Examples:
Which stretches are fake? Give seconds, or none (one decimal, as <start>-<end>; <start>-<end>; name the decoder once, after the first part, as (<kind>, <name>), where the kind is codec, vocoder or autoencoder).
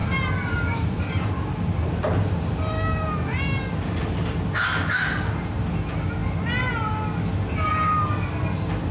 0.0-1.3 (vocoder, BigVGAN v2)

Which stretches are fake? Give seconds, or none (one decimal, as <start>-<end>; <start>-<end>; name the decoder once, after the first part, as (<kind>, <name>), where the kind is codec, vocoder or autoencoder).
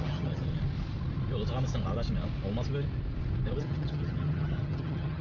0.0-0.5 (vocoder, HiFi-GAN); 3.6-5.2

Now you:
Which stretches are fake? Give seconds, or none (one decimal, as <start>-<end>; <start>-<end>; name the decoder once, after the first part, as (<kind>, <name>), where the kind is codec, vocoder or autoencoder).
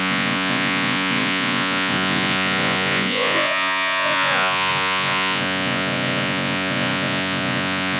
0.0-8.0 (vocoder, Vocos)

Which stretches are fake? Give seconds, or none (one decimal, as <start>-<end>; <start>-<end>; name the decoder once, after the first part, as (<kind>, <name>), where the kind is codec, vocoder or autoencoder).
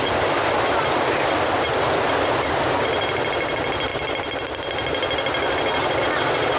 0.0-6.6 (vocoder, BigVGAN v2)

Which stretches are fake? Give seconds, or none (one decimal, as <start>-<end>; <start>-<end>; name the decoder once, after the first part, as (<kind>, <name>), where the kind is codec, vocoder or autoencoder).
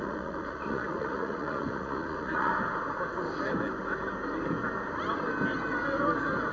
0.0-2.5 (vocoder, Vocos)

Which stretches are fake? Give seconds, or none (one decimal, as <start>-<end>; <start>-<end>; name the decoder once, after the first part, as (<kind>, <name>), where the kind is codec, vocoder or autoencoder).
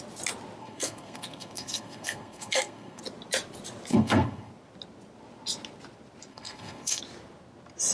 0.6-3.0 (codec, SNAC); 3.9-4.5; 6.3-7.0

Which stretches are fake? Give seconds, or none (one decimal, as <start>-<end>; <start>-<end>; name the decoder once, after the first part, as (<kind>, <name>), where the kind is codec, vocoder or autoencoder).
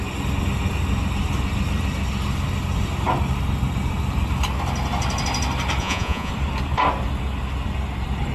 5.8-6.3 (vocoder, Vocos)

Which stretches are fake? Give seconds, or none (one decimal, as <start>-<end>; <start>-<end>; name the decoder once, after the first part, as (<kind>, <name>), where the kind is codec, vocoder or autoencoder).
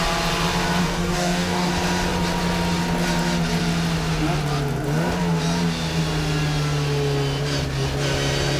0.8-1.7 (codec, DAC)